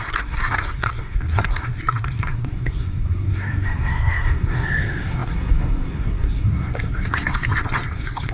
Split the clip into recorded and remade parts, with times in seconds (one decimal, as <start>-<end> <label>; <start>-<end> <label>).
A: 0.0-8.3 remade